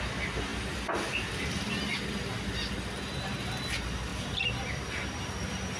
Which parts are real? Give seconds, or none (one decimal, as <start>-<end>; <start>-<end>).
0.0-5.8